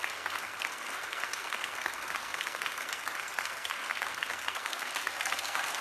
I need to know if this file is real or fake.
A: fake